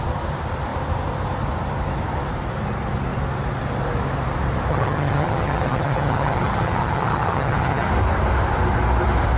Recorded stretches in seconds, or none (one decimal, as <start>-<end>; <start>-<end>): 0.0-4.7; 7.9-9.4